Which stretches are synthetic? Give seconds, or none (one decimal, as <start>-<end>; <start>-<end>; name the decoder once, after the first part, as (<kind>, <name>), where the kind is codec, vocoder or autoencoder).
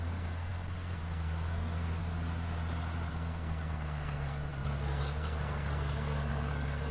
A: 0.0-2.0 (codec, SNAC); 3.1-6.9